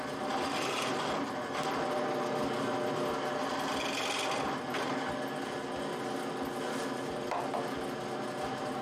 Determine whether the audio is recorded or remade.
recorded